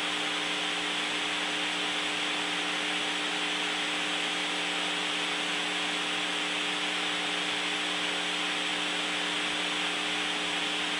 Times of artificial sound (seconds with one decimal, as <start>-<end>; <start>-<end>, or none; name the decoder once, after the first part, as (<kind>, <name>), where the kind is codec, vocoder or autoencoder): none